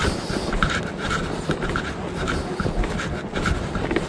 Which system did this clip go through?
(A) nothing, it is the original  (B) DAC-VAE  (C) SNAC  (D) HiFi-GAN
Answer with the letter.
A